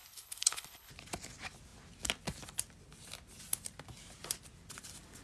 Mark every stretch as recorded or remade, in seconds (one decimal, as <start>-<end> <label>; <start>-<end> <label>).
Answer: 0.0-0.9 remade; 0.9-5.2 recorded

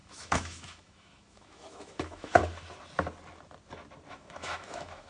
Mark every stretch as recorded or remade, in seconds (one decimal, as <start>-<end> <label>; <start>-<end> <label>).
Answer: 0.0-2.4 remade; 2.4-4.1 recorded; 4.1-5.1 remade

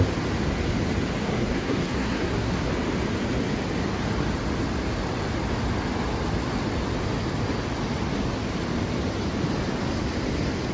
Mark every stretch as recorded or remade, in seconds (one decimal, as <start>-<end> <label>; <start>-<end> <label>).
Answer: 0.0-1.2 recorded; 1.2-2.7 remade; 2.7-10.7 recorded

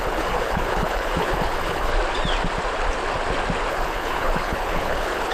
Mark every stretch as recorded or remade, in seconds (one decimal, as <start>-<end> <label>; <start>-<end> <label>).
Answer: 0.0-1.9 remade; 1.9-3.7 recorded; 3.7-5.3 remade

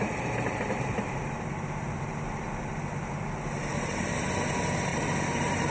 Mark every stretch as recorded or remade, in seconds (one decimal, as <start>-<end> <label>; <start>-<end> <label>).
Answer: 0.0-3.1 remade; 3.1-3.7 recorded; 3.7-4.3 remade; 4.3-4.9 recorded; 4.9-5.7 remade

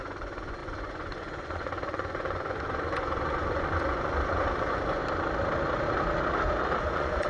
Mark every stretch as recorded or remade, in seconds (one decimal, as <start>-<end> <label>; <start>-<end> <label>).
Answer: 0.0-5.0 remade; 5.0-6.8 recorded; 6.8-7.3 remade

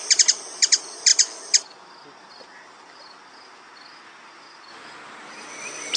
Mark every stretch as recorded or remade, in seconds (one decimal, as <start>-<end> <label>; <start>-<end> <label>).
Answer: 0.0-6.0 recorded

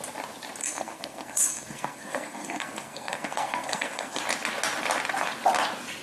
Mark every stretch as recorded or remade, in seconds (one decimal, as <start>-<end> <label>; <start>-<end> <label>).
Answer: 0.0-0.6 recorded; 0.6-4.2 remade; 4.2-6.0 recorded